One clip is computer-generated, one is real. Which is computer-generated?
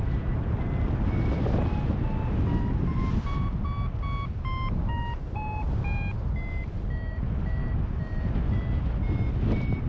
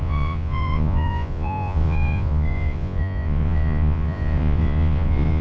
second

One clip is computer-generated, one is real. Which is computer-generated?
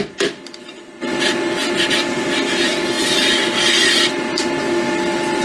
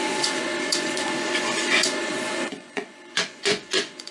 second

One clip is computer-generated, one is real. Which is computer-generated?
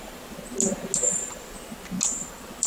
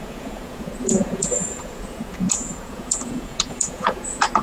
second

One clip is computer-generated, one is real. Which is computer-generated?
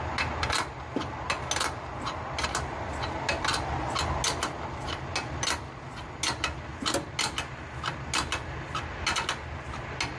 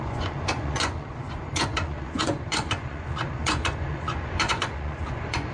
second